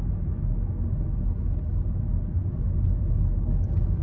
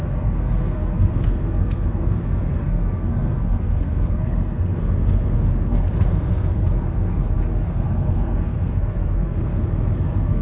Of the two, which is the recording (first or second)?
first